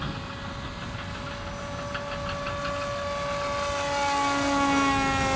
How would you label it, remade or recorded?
recorded